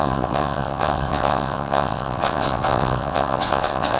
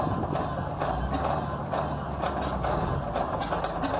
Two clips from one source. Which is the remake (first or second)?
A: first